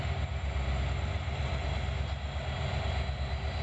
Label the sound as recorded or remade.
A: recorded